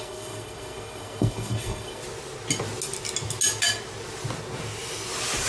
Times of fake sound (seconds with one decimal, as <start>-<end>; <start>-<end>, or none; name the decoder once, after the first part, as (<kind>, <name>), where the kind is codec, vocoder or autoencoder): 0.0-2.0 (codec, SNAC)